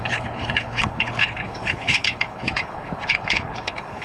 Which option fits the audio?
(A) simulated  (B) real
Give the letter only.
A